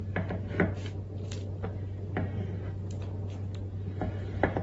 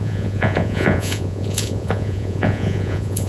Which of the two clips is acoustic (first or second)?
first